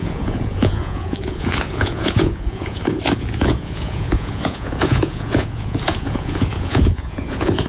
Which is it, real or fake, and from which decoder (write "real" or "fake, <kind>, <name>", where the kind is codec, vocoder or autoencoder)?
fake, vocoder, Vocos